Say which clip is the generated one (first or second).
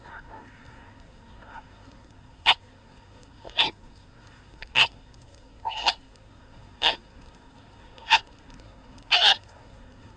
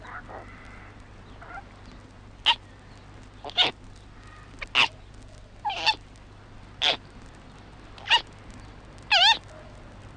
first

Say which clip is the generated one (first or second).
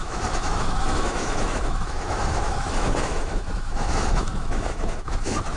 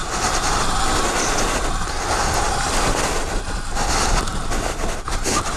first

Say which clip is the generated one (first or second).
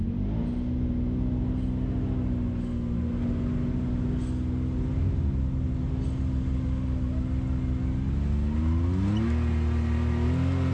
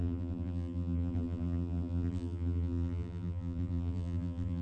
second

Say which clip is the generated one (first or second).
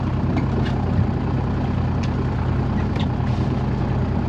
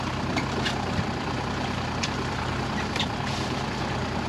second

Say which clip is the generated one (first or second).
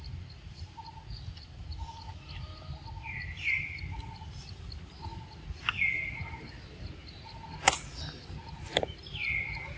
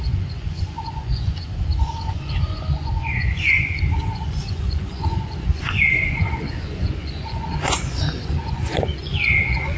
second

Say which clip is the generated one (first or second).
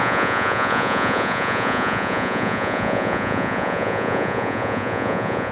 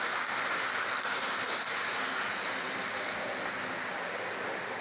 first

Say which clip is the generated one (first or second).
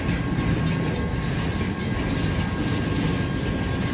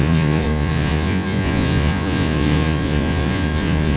second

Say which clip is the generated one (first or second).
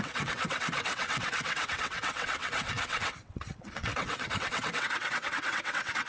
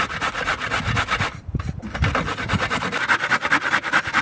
first